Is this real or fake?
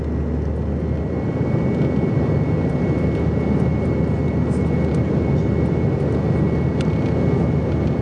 real